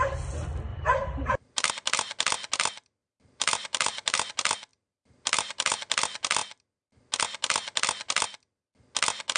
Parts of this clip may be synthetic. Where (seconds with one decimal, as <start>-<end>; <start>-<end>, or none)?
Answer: 0.7-1.7; 3.0-4.3; 4.7-5.8